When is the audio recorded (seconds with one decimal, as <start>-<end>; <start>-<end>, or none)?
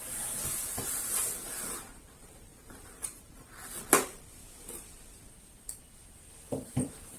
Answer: 1.1-1.7; 4.4-6.5